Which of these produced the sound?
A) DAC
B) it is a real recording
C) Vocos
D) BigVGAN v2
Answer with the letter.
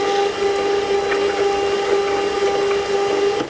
B